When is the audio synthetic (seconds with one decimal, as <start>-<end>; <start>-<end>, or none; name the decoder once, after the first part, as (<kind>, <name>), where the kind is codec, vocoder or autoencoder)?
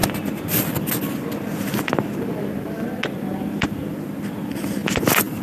none